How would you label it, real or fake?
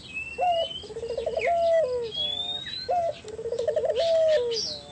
real